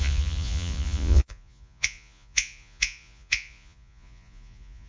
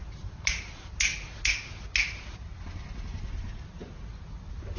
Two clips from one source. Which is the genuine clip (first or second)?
second